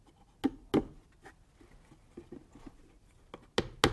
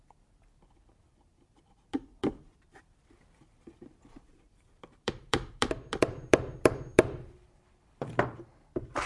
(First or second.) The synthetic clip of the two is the second